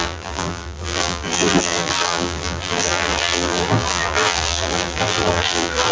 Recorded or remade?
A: remade